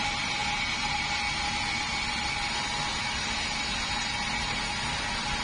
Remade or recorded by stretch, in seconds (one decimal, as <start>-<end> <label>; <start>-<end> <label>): 0.0-5.4 recorded